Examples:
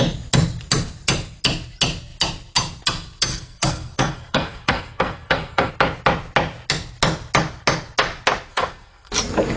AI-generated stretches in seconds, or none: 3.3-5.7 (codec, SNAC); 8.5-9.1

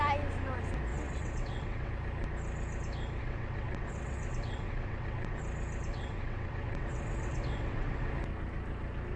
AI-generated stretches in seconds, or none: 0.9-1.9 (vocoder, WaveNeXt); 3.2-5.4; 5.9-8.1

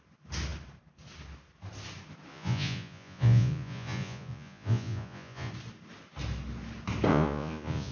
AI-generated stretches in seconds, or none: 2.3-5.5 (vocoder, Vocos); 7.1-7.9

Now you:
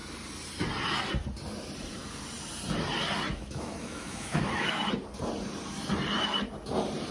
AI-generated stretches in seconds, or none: 3.3-4.8 (autoencoder, DAC-VAE)

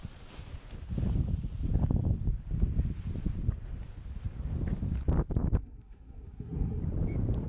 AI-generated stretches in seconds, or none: 5.6-6.8 (codec, SNAC)